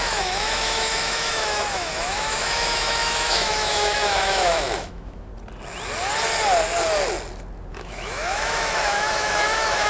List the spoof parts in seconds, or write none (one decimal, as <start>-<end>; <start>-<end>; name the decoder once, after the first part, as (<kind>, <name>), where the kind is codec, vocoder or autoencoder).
0.0-5.3 (autoencoder, DAC-VAE); 7.7-9.9